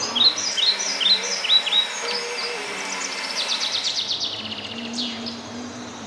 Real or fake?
real